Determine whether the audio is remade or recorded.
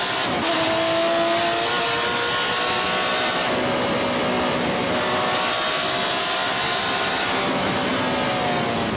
recorded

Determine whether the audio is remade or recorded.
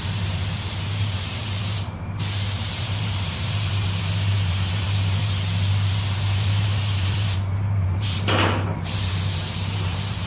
remade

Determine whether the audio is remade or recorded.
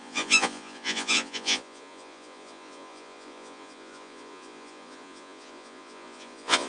remade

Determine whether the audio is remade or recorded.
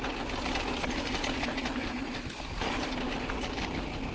recorded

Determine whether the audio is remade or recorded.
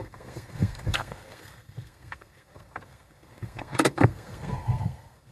remade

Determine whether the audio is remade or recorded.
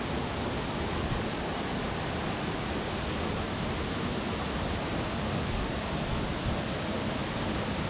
recorded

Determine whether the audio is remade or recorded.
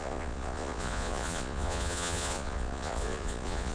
remade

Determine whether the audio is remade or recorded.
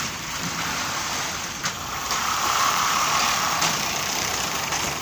remade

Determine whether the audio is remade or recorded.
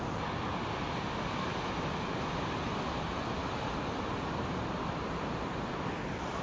recorded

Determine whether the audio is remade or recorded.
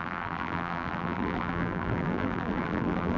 remade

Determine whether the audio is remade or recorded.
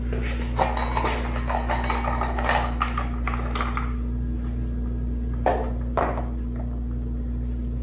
recorded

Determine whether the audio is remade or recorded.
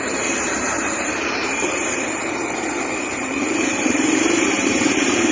remade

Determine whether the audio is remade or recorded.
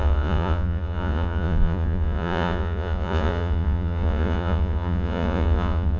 remade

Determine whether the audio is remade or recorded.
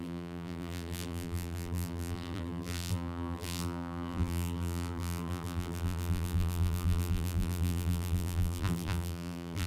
remade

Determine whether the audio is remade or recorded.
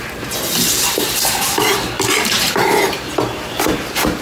remade